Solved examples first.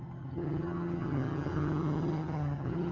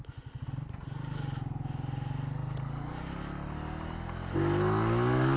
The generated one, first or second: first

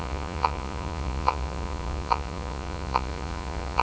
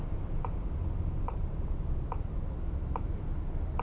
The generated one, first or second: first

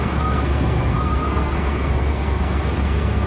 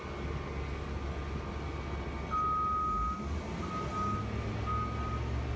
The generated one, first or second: first